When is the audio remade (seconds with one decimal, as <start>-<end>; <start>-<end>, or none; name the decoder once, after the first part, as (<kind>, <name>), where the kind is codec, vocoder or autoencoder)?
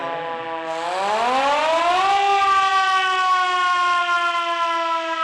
none